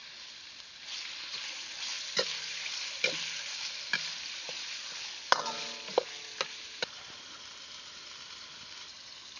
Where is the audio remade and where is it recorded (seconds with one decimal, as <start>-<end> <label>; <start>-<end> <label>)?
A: 0.0-9.4 recorded